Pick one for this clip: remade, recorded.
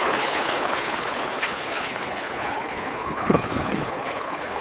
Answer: remade